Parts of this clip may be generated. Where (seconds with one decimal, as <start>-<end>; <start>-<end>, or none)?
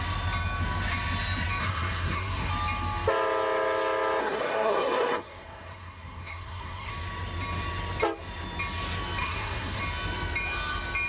1.6-2.5; 4.2-6.9; 9.2-9.8